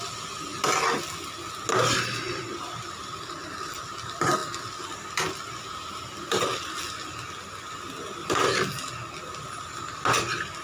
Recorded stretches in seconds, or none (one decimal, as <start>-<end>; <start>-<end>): 0.0-10.6